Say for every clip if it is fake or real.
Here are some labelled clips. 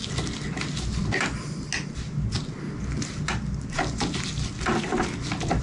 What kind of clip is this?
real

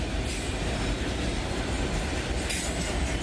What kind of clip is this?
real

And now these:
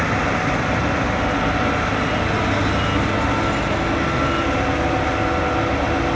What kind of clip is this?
real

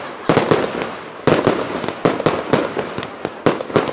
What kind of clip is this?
real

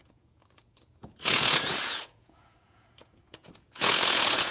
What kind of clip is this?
fake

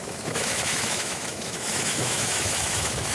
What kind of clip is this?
fake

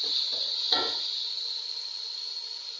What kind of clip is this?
real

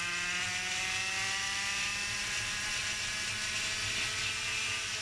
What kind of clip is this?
real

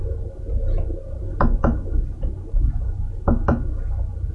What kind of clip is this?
real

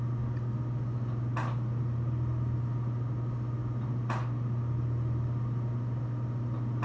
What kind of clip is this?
real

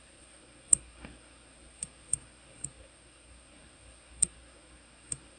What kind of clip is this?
fake